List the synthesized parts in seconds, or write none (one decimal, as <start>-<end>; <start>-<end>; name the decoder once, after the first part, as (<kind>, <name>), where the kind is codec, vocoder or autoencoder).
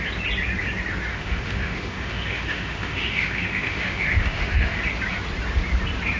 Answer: 1.1-4.8 (autoencoder, DAC-VAE)